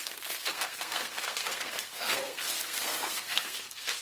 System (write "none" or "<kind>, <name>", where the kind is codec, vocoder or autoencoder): codec, SNAC